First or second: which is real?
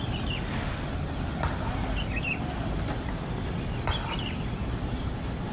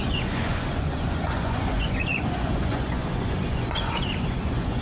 first